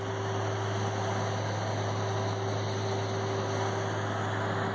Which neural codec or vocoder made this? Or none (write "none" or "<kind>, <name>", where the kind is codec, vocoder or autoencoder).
none